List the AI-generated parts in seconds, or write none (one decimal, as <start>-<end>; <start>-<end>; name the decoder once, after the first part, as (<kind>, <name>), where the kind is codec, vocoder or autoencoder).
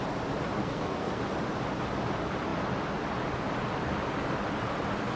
0.6-1.2 (codec, SNAC)